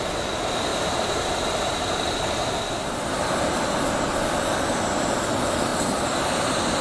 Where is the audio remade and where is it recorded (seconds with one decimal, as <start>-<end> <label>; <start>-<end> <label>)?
0.0-6.8 recorded